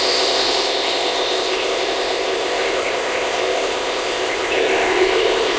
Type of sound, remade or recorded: remade